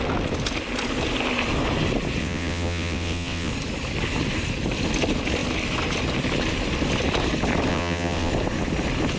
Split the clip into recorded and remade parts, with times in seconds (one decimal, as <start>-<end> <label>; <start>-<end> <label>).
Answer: 0.0-2.2 recorded; 2.2-3.5 remade; 3.5-7.7 recorded; 7.7-8.3 remade; 8.3-9.2 recorded